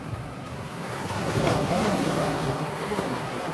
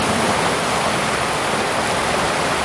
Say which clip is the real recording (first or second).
second